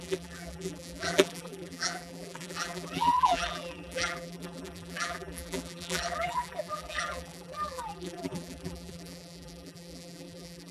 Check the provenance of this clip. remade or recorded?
remade